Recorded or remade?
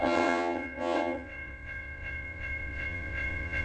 remade